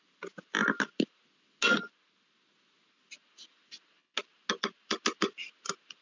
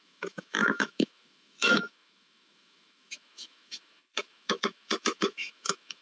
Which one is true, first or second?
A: first